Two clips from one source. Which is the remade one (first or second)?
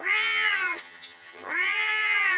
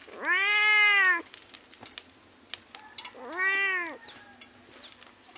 first